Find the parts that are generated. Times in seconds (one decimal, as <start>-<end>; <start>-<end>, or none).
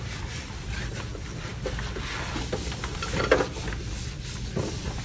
none